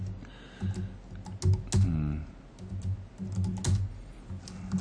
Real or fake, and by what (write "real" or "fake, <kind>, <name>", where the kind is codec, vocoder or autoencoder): real